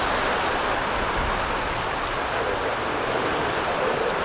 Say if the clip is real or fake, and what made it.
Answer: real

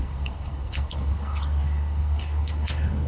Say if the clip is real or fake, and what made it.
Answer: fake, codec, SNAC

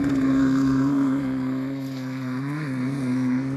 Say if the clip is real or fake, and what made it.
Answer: fake, codec, SNAC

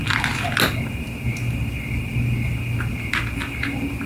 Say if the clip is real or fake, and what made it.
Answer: real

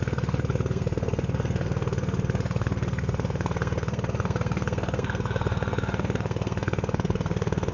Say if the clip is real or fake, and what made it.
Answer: fake, codec, SNAC